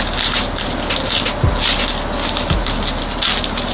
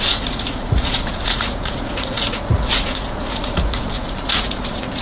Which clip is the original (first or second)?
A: first